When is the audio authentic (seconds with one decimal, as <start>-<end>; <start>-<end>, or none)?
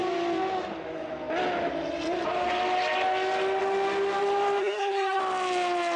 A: 0.0-4.6; 5.2-6.0